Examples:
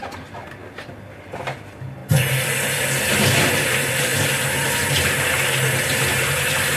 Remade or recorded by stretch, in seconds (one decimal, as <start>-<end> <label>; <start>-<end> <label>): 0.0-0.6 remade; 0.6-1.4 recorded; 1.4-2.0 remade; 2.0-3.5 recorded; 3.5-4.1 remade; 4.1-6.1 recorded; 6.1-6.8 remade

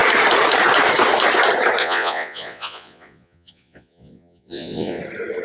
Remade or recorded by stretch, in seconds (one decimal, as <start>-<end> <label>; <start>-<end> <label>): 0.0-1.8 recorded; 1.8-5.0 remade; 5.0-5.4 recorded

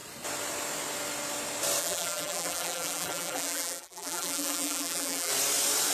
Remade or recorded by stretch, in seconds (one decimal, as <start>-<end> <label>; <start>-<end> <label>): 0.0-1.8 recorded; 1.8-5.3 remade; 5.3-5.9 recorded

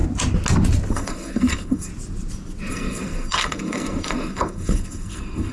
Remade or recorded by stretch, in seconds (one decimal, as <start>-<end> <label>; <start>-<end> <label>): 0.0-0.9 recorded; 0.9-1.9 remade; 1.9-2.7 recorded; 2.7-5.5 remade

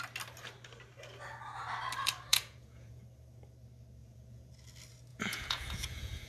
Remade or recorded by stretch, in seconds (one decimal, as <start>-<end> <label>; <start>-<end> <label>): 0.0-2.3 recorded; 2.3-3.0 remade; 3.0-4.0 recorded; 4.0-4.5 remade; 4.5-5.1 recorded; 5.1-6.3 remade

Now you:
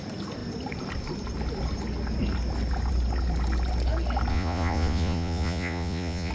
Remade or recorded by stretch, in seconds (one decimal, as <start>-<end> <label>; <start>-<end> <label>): 0.0-4.3 recorded; 4.3-6.3 remade